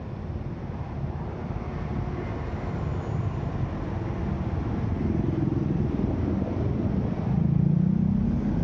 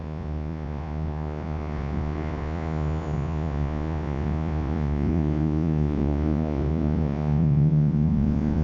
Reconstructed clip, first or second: second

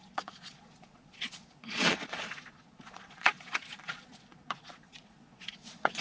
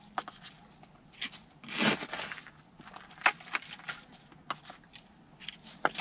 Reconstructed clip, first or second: first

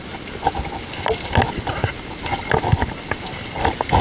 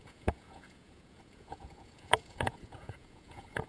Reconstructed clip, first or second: second